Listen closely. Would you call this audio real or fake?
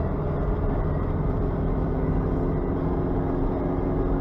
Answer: real